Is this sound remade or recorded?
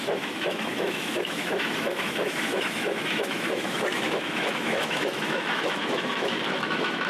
remade